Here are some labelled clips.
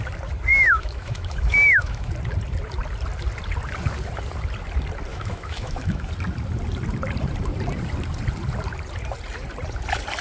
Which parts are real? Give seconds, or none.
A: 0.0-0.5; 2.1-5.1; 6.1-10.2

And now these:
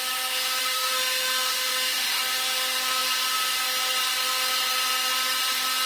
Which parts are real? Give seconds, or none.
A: 0.0-0.6; 2.2-5.9